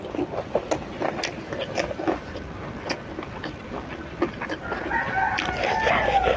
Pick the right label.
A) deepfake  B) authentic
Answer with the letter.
B